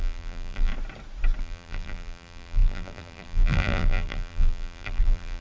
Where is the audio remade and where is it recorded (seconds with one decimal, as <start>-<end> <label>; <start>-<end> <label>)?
0.0-0.7 remade; 0.7-1.4 recorded; 1.4-5.4 remade